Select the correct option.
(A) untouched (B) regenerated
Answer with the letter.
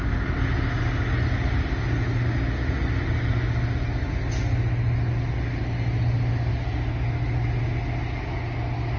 A